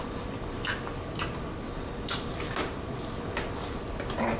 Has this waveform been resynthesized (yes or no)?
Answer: no